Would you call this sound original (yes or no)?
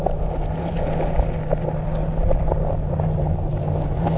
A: yes